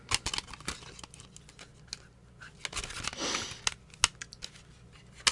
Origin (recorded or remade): recorded